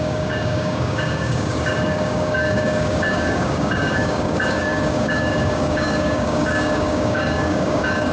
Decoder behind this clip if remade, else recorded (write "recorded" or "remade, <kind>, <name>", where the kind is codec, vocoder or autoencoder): remade, codec, DAC